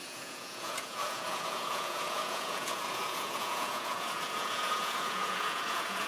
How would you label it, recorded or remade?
remade